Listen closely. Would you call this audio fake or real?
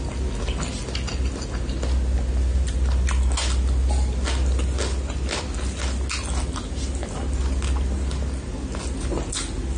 real